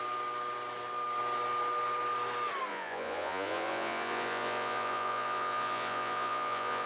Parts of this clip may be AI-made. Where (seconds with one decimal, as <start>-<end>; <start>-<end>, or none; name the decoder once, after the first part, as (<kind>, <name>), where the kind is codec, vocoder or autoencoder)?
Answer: 2.7-6.9 (vocoder, Vocos)